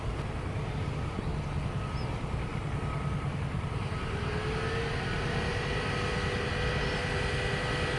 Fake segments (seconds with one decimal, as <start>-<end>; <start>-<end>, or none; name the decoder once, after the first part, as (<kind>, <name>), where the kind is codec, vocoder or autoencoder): none